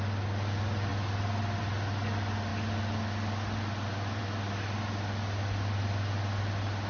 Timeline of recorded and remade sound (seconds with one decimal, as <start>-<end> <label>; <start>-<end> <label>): 0.0-6.9 recorded